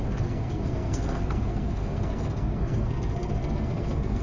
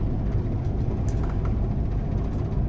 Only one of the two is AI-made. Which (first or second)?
first